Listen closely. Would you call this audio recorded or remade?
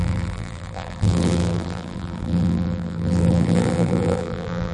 remade